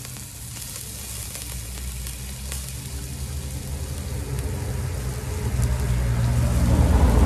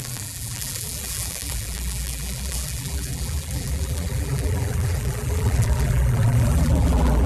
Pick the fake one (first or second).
second